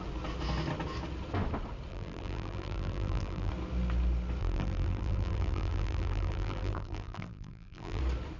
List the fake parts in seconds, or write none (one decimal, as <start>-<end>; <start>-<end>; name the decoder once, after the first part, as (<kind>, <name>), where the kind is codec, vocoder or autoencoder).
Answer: 1.9-3.5 (vocoder, BigVGAN v2); 4.4-8.0